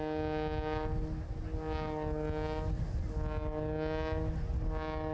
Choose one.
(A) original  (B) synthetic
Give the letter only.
A